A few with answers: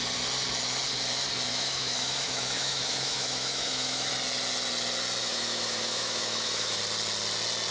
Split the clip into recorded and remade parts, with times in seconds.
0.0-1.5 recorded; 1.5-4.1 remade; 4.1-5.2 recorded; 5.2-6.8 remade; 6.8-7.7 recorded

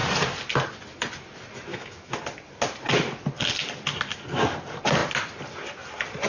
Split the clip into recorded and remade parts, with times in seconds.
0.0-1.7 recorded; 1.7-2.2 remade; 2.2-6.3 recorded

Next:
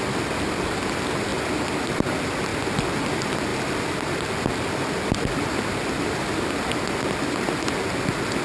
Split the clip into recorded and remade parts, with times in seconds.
0.0-8.4 recorded